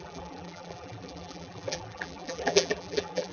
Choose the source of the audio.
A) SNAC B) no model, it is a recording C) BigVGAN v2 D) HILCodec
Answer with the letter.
C